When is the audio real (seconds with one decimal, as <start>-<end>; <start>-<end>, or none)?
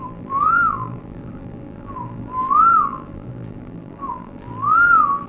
none